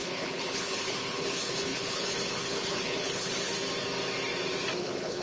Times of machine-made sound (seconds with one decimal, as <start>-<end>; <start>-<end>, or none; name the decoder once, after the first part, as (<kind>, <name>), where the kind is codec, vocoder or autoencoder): 0.0-3.5 (codec, HILCodec); 4.8-5.2

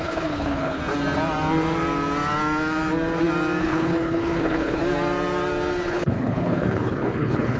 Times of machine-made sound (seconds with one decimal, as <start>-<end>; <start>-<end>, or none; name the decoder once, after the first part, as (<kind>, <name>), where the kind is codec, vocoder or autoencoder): 0.0-0.8 (codec, HILCodec); 3.6-4.8; 5.9-7.6